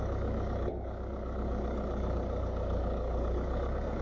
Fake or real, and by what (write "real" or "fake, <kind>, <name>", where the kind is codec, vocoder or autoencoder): fake, codec, DAC